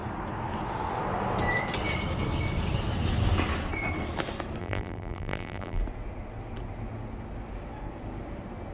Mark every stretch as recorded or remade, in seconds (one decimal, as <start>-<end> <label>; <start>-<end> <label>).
0.0-4.6 recorded; 4.6-5.8 remade; 5.8-8.7 recorded